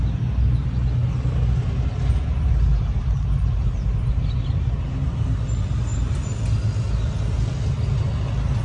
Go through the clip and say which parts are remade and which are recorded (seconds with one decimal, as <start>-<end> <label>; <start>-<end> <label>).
0.0-5.9 recorded; 5.9-6.4 remade; 6.4-8.6 recorded